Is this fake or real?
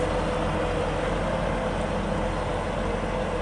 real